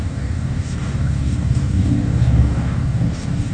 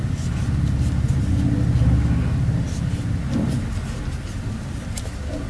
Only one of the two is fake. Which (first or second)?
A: first